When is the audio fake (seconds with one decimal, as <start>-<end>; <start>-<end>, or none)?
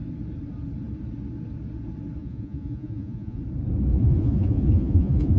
2.2-3.4; 3.9-5.4